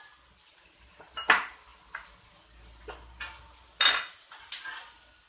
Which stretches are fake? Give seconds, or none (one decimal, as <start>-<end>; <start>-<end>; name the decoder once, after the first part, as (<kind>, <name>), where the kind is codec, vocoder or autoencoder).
none